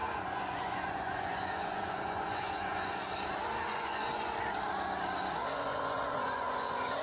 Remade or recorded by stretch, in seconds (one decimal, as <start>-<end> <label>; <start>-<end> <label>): 0.0-3.0 remade; 3.0-3.7 recorded; 3.7-4.3 remade; 4.3-5.5 recorded; 5.5-7.0 remade